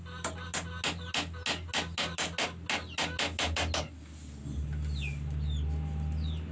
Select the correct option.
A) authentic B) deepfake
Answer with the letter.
A